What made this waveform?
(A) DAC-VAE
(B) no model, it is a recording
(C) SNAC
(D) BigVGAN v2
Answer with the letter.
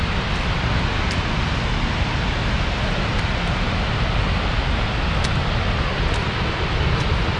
B